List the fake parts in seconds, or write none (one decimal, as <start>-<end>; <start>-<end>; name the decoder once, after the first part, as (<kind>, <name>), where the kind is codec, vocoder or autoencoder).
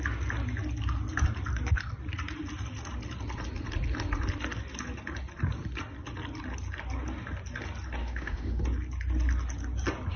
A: 8.0-8.6 (autoencoder, DAC-VAE)